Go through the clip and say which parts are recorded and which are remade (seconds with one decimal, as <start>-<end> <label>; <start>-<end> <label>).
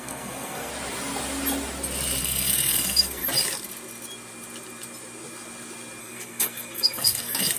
0.0-0.7 remade; 0.7-2.2 recorded; 2.2-3.2 remade; 3.2-6.0 recorded; 6.0-7.6 remade